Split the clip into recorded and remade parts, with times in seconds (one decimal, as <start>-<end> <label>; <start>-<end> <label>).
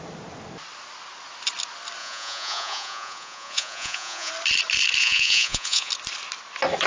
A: 0.0-2.0 recorded; 2.0-4.3 remade; 4.3-5.0 recorded; 5.0-5.9 remade; 5.9-6.9 recorded